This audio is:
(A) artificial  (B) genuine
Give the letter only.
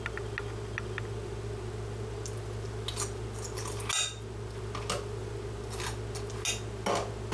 B